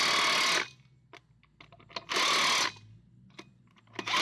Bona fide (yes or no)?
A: yes